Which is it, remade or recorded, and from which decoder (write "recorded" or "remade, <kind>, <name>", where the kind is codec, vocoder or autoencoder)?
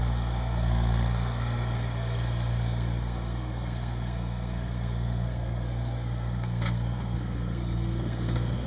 remade, codec, SNAC